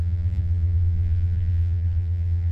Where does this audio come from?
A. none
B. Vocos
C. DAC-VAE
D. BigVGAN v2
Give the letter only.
D